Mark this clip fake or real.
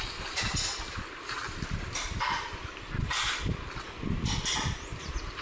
fake